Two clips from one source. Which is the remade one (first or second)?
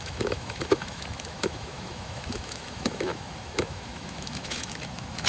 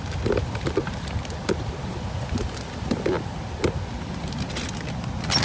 first